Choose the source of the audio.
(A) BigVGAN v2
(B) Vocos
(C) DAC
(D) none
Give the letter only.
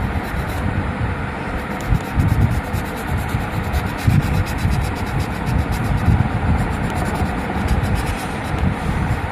A